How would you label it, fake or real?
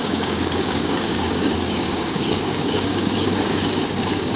fake